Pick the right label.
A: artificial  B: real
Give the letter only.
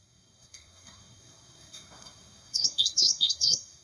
A